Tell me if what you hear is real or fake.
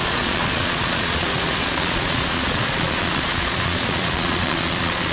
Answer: fake